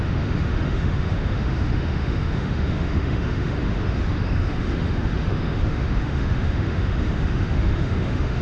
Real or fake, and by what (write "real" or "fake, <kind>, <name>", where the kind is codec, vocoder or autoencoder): fake, autoencoder, DAC-VAE